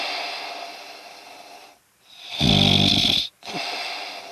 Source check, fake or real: real